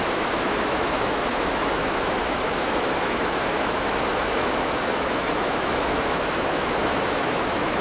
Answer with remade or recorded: remade